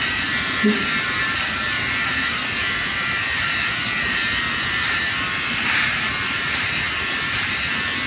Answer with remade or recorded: remade